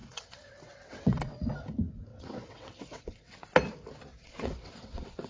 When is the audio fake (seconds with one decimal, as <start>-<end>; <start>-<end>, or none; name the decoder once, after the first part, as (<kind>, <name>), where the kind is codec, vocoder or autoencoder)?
0.0-1.5 (vocoder, WaveNeXt); 2.1-3.3; 4.1-5.3